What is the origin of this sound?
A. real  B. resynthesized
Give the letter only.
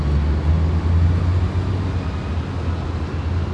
A